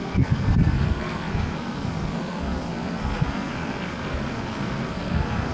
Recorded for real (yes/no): no